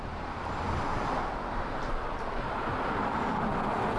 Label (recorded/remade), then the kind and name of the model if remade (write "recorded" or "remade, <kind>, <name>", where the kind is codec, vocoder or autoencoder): recorded